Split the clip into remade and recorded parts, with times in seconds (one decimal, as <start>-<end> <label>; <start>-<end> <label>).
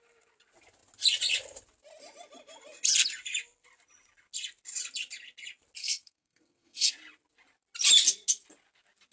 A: 0.0-5.8 recorded; 5.8-6.9 remade; 6.9-9.1 recorded